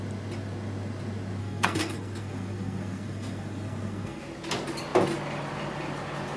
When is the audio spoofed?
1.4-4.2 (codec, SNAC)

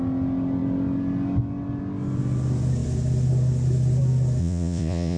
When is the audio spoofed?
4.4-5.2 (vocoder, Vocos)